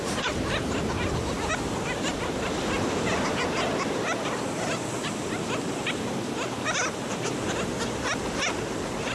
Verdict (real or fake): real